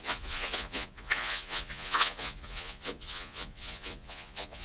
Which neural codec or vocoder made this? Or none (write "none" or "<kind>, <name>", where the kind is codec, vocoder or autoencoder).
vocoder, Vocos